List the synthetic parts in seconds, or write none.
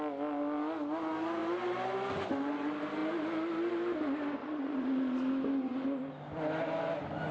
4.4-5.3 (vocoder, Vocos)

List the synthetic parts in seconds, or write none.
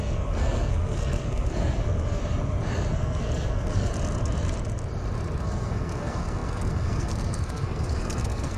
0.0-2.2 (codec, SNAC); 2.9-3.9; 5.4-8.6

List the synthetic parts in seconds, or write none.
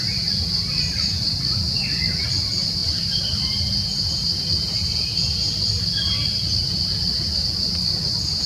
none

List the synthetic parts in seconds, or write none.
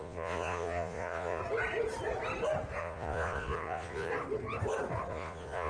0.0-1.4 (vocoder, Vocos); 2.8-4.1; 5.1-5.7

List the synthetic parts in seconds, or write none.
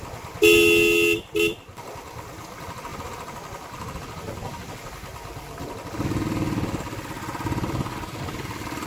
none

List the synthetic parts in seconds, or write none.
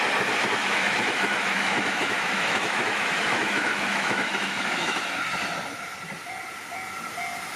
0.6-5.0 (autoencoder, DAC-VAE)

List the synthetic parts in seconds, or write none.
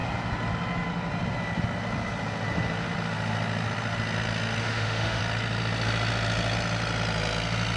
4.6-5.2 (autoencoder, DAC-VAE)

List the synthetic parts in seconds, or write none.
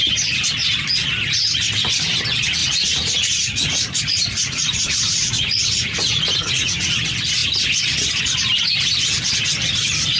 2.6-6.9 (vocoder, Vocos)